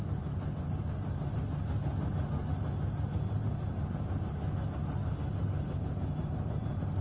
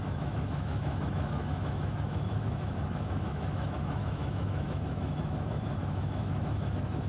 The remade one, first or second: second